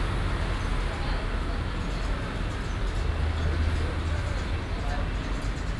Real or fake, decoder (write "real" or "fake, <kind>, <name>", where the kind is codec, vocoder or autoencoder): real